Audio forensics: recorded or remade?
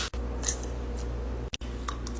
recorded